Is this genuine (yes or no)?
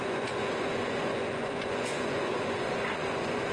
no